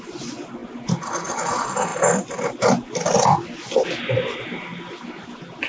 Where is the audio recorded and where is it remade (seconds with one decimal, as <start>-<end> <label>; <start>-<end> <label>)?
0.0-5.7 recorded